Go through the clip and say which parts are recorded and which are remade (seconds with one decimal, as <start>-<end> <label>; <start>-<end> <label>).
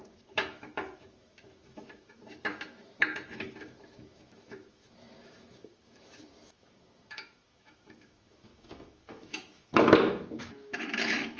0.0-11.4 remade